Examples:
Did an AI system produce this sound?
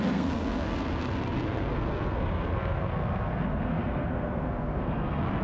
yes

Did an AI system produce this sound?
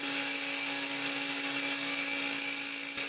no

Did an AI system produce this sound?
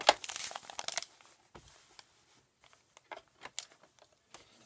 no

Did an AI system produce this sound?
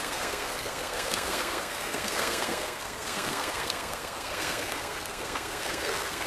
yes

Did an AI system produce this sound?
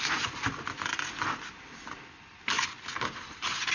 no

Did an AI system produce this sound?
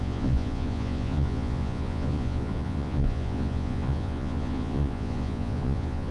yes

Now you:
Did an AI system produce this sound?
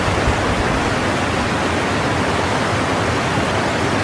no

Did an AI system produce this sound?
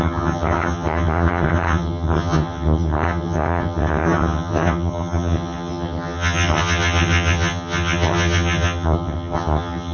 yes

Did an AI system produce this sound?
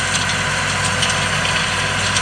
no